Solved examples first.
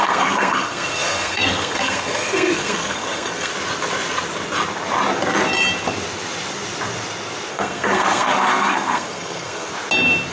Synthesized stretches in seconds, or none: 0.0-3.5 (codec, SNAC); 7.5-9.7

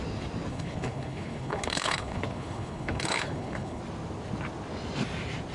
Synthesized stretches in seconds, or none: 0.5-3.8 (codec, HILCodec)

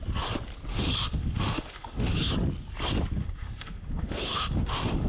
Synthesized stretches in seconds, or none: 0.7-2.3 (autoencoder, DAC-VAE); 3.2-5.1

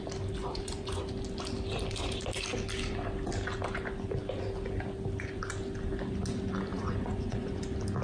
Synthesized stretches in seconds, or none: 0.4-1.0 (vocoder, Vocos); 6.7-7.6

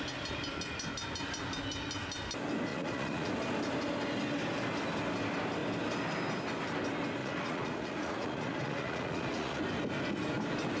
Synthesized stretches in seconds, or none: 2.7-3.3 (vocoder, Vocos); 7.2-9.6

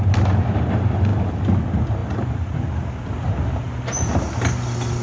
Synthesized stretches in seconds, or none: none

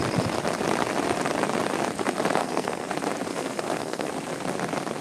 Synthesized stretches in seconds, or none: 2.4-2.9 (codec, SNAC); 3.3-4.1

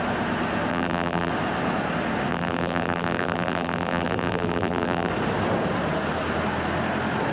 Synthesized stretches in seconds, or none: 0.7-1.3 (vocoder, BigVGAN v2); 2.3-5.1